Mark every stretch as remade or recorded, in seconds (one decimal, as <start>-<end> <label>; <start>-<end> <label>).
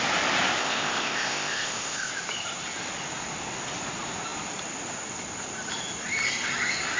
0.0-0.6 recorded; 0.6-2.1 remade; 2.1-7.0 recorded